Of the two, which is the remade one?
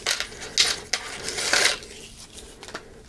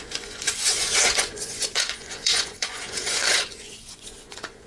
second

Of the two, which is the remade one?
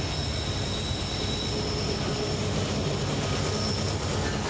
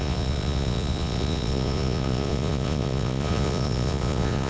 second